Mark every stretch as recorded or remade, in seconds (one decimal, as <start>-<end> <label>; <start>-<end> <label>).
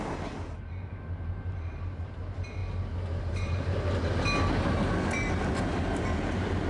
0.0-6.7 recorded